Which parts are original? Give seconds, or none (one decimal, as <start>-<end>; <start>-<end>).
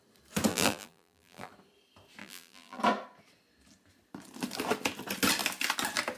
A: 0.0-0.5; 1.5-2.2; 2.8-6.2